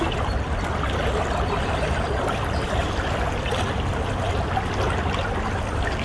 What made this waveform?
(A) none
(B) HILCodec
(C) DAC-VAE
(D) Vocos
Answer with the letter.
A